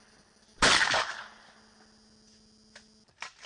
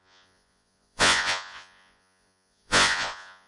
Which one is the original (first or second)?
first